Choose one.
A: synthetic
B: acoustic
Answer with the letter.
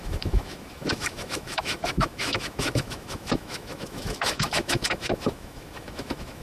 A